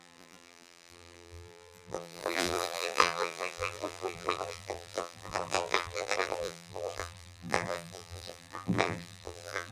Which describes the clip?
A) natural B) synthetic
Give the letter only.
B